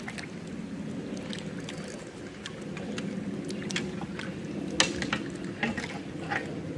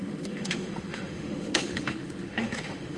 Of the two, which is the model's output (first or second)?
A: second